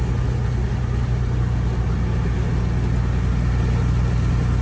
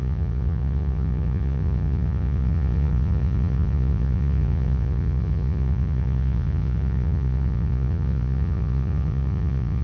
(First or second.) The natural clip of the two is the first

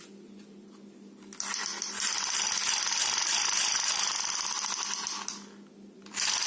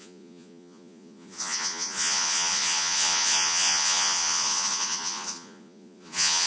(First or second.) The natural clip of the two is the first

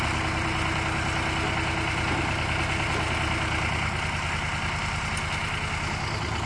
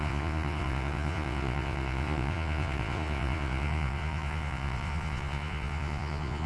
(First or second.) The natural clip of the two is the first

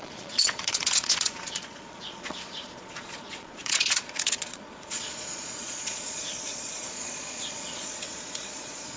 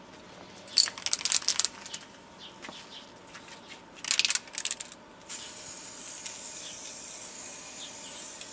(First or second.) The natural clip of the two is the second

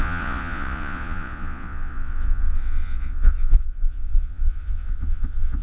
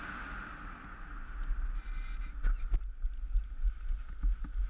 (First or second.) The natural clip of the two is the second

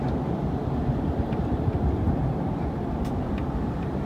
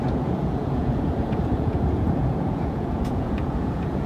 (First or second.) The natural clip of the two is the first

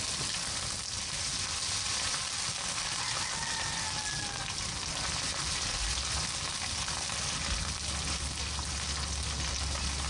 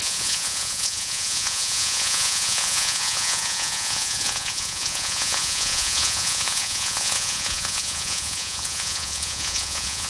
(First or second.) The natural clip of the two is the first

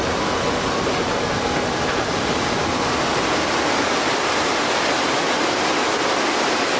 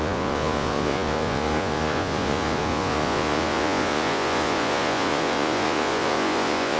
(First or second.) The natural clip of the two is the first